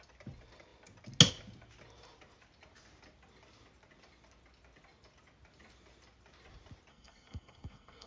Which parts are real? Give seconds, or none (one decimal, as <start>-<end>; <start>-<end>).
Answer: 0.0-6.9